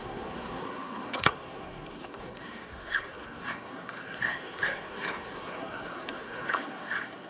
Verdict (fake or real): fake